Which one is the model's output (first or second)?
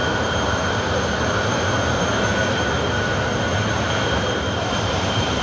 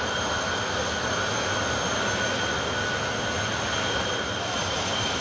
first